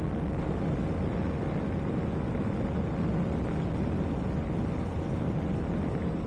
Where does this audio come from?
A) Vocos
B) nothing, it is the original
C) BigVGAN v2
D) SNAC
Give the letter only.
B